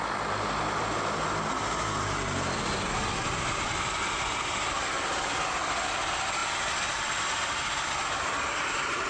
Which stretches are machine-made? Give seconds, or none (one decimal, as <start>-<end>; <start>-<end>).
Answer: none